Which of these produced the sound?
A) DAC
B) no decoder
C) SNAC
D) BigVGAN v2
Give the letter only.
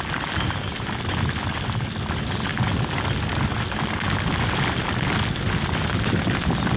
B